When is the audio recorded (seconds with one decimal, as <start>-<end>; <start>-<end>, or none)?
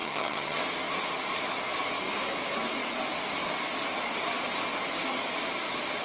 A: 0.6-6.0